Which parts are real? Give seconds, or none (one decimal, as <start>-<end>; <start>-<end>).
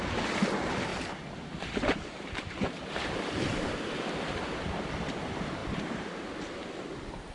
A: 0.0-0.9; 2.9-5.6; 6.7-7.3